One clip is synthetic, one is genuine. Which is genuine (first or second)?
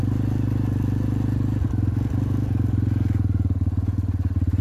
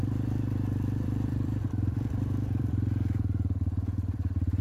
first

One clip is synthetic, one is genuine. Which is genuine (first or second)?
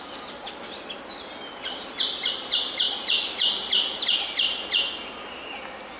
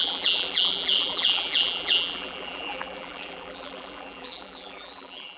first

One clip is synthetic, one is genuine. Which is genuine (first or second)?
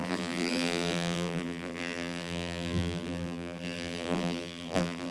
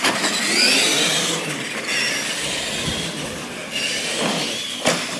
second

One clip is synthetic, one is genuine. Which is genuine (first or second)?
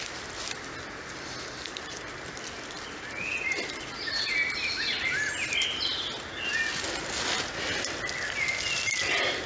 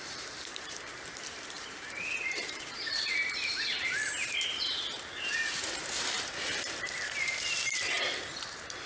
first